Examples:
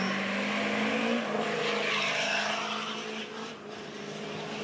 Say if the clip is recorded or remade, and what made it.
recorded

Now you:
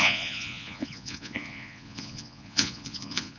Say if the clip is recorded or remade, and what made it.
remade, vocoder, Vocos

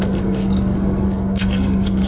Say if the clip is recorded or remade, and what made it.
remade, codec, SNAC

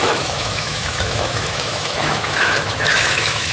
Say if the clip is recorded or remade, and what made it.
remade, autoencoder, DAC-VAE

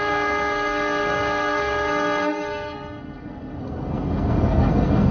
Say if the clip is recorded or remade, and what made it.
remade, codec, SNAC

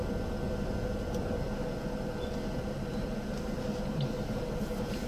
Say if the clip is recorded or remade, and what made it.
recorded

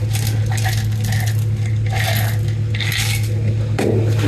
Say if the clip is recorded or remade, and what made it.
recorded